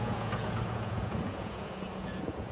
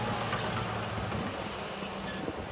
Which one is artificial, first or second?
first